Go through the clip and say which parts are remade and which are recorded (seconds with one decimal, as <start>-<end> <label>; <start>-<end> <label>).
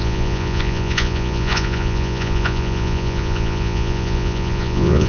0.0-5.1 remade